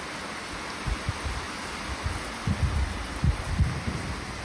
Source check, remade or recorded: recorded